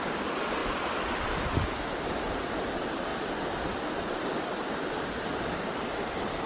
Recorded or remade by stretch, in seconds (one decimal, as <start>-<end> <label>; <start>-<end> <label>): 0.0-6.5 recorded